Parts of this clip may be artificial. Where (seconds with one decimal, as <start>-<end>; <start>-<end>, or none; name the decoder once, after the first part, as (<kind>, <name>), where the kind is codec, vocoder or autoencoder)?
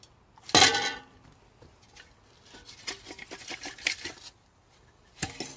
none